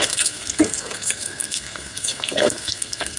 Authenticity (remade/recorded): remade